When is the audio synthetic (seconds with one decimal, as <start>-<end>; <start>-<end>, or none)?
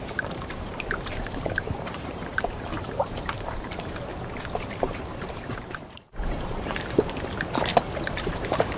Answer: 0.0-4.1; 4.6-8.8